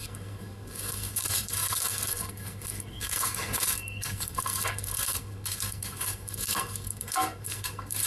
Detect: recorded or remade remade